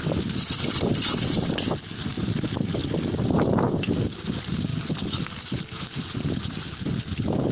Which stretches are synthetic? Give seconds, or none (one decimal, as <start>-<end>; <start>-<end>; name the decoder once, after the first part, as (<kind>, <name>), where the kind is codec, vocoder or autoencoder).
0.0-4.7 (vocoder, BigVGAN v2)